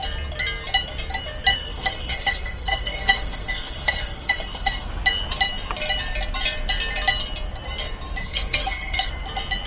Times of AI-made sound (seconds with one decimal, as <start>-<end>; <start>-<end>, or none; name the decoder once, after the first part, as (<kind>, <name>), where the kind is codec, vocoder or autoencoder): 1.5-4.9 (codec, SNAC); 8.2-9.1